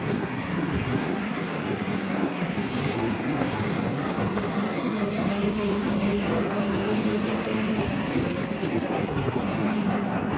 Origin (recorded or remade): remade